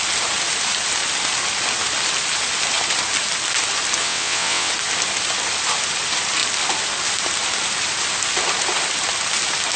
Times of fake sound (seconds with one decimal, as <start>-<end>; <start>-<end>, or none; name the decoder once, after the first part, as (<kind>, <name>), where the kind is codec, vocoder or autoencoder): 4.0-4.7 (vocoder, WaveNeXt)